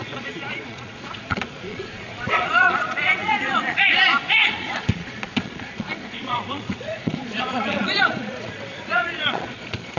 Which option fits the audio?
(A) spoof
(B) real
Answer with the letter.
A